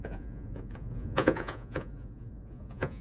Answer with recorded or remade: remade